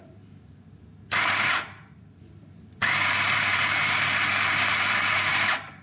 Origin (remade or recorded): remade